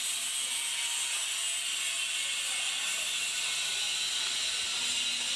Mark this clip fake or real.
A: real